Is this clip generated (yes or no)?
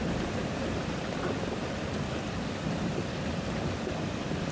yes